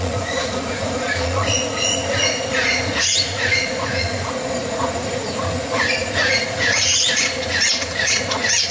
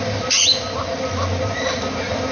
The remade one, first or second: first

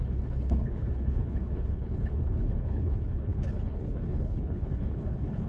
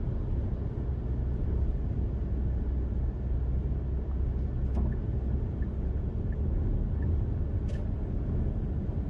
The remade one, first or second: first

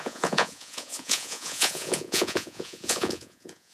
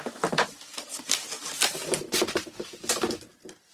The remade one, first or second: first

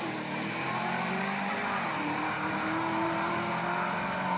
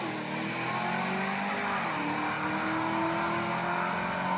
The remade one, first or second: first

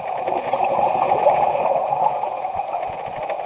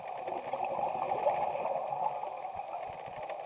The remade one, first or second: first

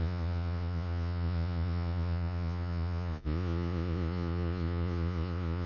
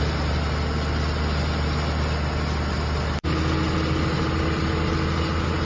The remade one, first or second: first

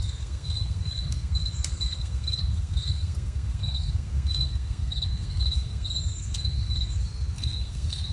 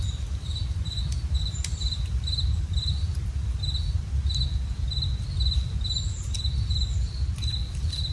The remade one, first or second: first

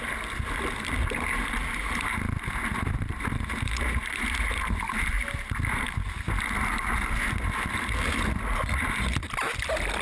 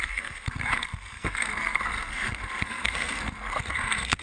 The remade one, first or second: second